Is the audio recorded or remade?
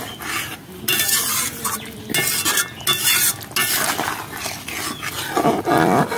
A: recorded